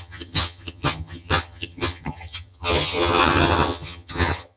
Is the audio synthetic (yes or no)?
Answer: yes